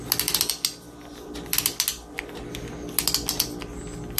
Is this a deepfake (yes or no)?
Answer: no